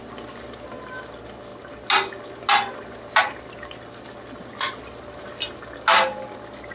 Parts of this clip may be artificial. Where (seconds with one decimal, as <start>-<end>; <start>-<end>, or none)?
none